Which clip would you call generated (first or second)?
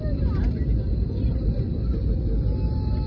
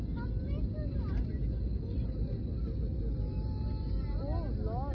first